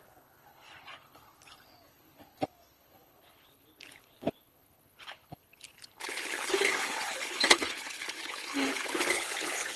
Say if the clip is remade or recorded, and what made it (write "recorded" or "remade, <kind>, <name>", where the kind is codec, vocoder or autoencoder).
remade, codec, HILCodec